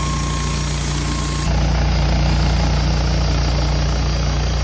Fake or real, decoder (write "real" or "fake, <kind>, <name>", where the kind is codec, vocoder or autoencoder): real